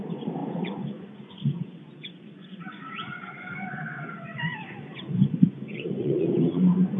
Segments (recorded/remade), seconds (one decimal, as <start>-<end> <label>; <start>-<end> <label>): 0.0-7.0 remade